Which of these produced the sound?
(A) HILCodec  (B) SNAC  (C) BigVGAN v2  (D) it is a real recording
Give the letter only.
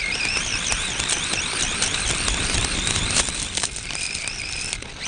C